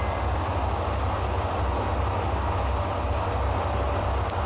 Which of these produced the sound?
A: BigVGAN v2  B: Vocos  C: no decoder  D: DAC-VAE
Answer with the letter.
C